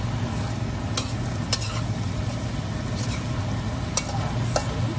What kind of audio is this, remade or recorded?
recorded